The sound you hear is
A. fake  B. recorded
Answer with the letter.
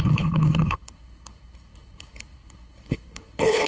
A